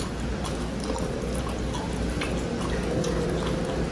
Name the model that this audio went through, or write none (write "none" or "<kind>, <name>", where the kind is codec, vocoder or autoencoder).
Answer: none